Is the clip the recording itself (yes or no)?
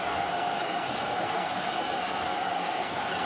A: no